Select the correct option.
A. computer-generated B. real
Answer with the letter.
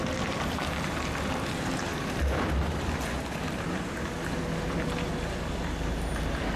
B